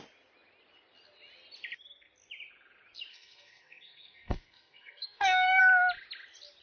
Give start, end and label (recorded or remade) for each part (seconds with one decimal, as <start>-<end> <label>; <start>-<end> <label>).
0.0-3.1 recorded; 3.1-5.6 remade; 5.6-6.6 recorded